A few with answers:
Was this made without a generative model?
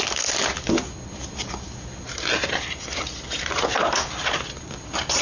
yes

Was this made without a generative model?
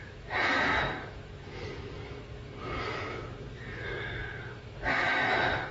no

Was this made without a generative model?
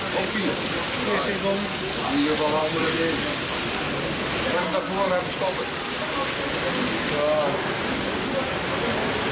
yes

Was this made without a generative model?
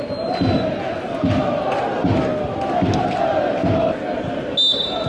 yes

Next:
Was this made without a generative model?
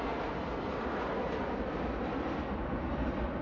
yes